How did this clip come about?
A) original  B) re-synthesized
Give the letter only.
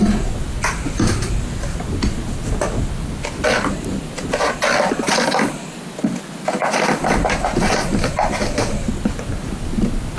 A